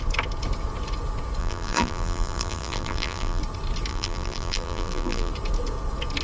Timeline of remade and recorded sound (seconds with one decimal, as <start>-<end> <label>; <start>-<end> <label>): 0.0-1.4 recorded; 1.4-3.4 remade; 3.4-3.9 recorded; 3.9-5.3 remade; 5.3-6.2 recorded